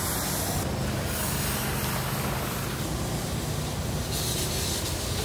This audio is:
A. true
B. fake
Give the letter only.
A